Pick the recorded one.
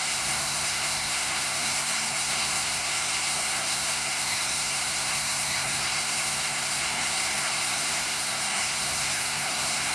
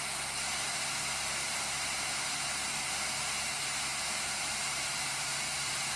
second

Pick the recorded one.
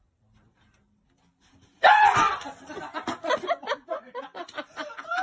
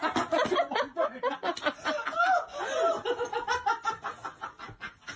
second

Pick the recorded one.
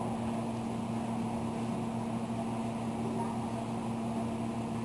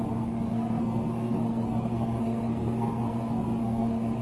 first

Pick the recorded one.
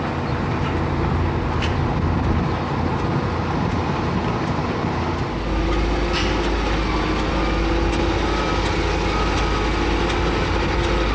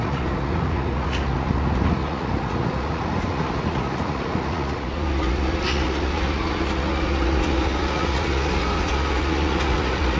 first